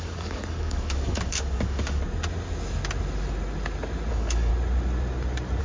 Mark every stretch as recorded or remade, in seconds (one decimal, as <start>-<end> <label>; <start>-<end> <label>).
0.0-2.0 remade; 2.0-4.1 recorded; 4.1-4.5 remade; 4.5-5.6 recorded